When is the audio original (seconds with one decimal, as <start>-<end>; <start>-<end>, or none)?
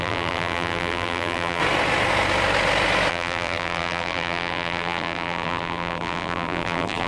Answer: 1.6-3.1